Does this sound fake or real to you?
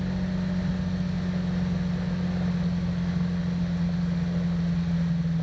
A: real